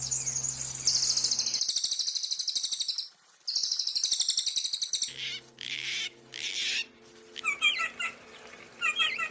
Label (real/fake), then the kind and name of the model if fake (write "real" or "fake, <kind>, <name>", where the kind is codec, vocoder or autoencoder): real